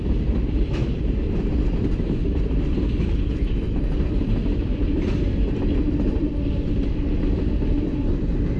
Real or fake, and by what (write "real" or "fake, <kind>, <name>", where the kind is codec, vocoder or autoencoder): fake, vocoder, BigVGAN v2